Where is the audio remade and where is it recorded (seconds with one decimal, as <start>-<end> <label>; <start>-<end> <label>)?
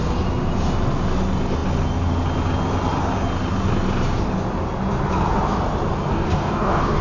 0.0-6.1 recorded; 6.1-7.0 remade